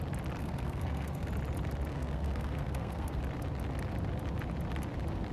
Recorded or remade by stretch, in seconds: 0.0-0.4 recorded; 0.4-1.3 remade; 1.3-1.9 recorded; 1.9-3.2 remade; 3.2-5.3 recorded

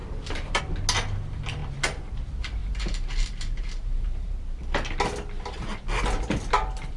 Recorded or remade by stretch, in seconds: 0.0-0.6 remade; 0.6-2.6 recorded; 2.6-4.4 remade; 4.4-7.0 recorded

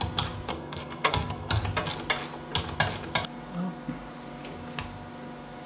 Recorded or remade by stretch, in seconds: 0.0-0.5 recorded; 0.5-1.6 remade; 1.6-5.7 recorded

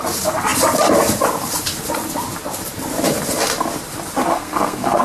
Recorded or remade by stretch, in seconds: 0.0-4.3 recorded; 4.3-5.0 remade

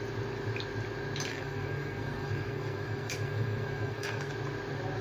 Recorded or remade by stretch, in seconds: 0.0-1.3 recorded; 1.3-4.3 remade; 4.3-5.0 recorded

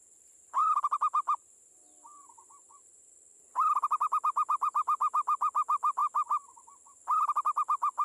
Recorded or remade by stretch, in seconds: 0.0-6.0 remade; 6.0-6.9 recorded; 6.9-8.0 remade

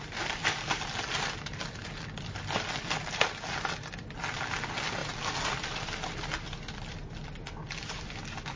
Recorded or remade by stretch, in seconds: 0.0-8.6 recorded

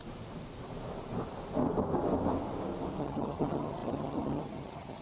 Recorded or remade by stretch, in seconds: 0.0-3.0 recorded; 3.0-5.0 remade